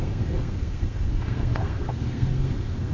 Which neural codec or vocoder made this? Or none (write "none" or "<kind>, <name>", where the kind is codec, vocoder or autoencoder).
codec, SNAC